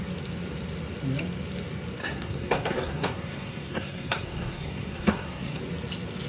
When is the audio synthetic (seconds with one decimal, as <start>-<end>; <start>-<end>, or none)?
2.0-5.6